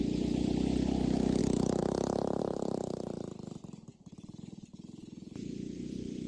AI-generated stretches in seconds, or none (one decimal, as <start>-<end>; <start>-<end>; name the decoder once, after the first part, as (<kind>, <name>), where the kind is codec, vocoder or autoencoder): 3.9-6.3 (vocoder, BigVGAN v2)